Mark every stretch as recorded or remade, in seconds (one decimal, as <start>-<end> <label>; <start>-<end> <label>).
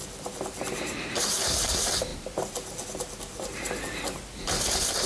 0.0-1.1 recorded; 1.1-2.1 remade; 2.1-5.1 recorded